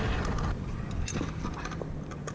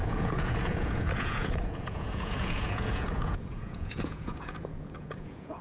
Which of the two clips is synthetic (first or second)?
second